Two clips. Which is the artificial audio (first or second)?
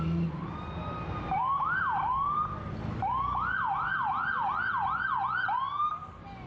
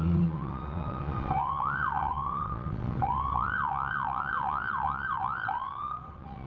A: second